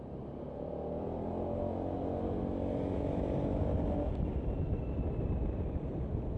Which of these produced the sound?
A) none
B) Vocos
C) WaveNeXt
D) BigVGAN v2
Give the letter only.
A